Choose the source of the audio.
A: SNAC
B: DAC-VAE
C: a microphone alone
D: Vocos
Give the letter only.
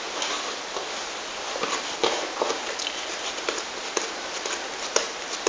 C